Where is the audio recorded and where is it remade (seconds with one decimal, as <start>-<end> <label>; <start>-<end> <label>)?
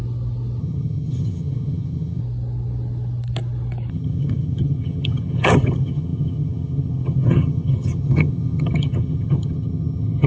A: 0.0-0.6 recorded; 0.6-2.2 remade; 2.2-3.9 recorded; 3.9-10.3 remade